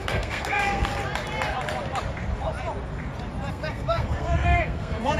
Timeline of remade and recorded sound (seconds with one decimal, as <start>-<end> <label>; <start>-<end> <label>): 0.0-0.9 remade; 0.9-3.5 recorded; 3.5-5.2 remade